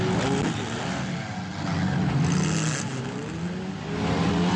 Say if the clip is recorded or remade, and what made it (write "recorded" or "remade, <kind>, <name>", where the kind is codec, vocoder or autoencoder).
recorded